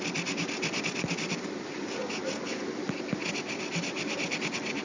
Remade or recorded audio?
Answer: recorded